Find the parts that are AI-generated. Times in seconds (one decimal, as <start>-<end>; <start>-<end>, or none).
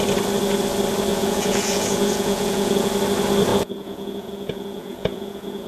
1.1-2.9; 3.5-5.7